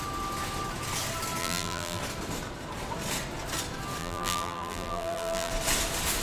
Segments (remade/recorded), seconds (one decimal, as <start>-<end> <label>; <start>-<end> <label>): 0.0-1.4 recorded; 1.4-2.0 remade; 2.0-4.0 recorded; 4.0-5.5 remade; 5.5-6.2 recorded